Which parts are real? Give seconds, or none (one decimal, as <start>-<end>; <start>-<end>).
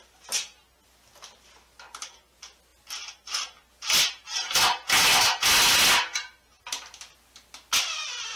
0.0-8.4